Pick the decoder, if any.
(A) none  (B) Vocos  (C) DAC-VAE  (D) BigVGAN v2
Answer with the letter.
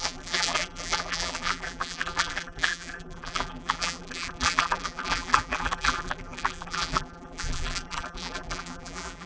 D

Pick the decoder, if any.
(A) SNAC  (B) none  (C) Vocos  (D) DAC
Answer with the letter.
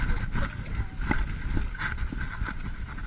B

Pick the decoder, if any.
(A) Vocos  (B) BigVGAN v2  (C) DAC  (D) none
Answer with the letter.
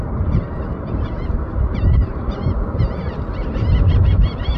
B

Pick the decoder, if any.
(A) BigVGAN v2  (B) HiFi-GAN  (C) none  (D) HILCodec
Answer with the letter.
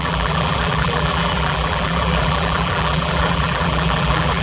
A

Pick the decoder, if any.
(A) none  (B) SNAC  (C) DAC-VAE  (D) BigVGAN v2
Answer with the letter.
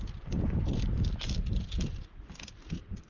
A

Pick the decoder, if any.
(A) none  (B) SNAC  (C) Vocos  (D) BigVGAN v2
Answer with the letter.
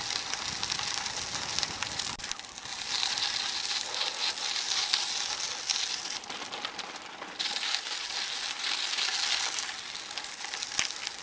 A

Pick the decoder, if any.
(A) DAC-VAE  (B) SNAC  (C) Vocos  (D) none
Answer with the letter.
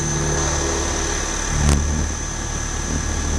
D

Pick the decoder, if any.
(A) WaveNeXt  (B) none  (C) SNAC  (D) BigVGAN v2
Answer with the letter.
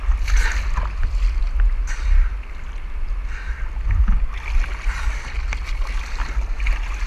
B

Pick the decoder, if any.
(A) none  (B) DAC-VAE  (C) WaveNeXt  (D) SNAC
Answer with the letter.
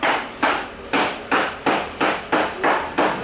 A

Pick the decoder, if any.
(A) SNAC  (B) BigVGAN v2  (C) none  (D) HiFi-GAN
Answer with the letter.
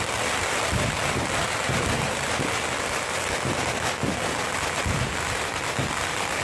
C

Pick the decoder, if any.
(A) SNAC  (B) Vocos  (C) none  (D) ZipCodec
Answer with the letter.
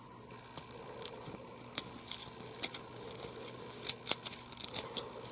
C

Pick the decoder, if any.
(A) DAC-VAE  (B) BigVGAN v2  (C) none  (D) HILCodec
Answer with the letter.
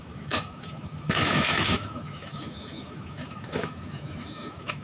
A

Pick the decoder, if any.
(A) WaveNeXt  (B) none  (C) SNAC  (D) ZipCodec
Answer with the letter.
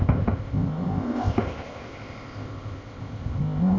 D